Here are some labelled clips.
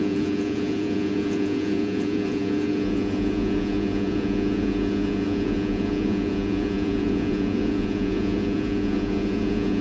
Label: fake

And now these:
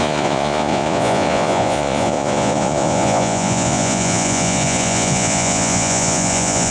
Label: fake